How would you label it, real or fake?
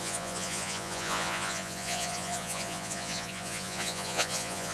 fake